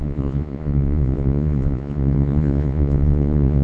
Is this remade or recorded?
remade